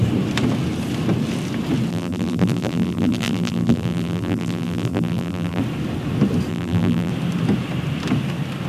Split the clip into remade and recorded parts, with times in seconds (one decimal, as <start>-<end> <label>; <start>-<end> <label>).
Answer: 0.0-1.9 recorded; 1.9-5.6 remade; 5.6-6.5 recorded; 6.5-7.1 remade; 7.1-8.7 recorded